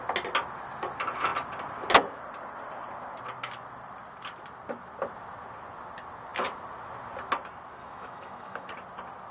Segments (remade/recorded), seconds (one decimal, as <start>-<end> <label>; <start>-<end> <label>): 0.0-7.8 recorded; 7.8-8.7 remade; 8.7-9.3 recorded